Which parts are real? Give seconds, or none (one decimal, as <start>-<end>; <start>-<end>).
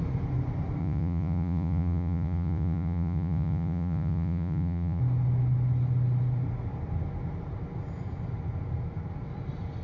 0.0-0.8; 5.0-9.8